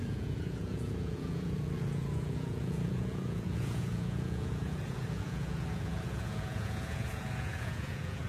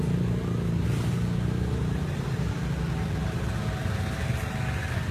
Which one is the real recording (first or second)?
second